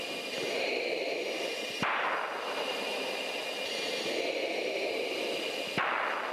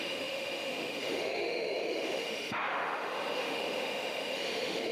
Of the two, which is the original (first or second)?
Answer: first